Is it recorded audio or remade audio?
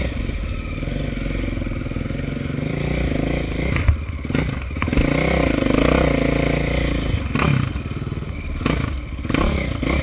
recorded